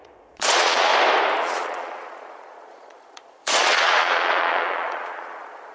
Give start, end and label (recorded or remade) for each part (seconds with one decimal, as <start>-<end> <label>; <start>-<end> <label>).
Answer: 0.0-0.9 remade; 0.9-1.4 recorded; 1.4-5.7 remade